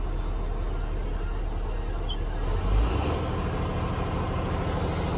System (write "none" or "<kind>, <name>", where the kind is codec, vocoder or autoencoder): none